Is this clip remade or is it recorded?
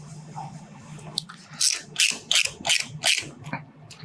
recorded